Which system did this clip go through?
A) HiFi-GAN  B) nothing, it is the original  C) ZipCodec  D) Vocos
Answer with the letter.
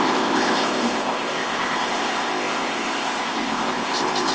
C